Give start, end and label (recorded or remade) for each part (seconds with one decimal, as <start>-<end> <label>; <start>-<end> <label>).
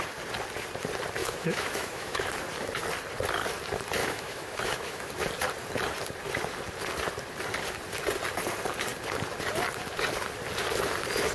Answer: 0.0-1.2 recorded; 1.2-2.3 remade; 2.3-4.0 recorded; 4.0-5.1 remade; 5.1-11.3 recorded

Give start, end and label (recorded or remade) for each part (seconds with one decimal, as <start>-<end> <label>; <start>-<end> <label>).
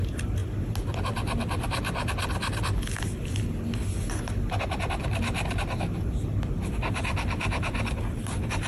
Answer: 0.0-0.4 remade; 0.4-4.9 recorded; 4.9-8.7 remade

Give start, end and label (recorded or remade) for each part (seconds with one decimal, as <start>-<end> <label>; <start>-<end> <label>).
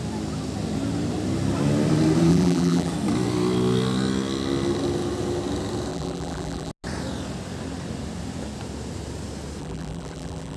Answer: 0.0-2.3 recorded; 2.3-2.9 remade; 2.9-5.9 recorded; 5.9-6.7 remade; 6.7-9.6 recorded; 9.6-10.6 remade